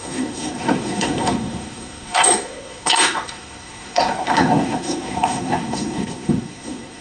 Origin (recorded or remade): remade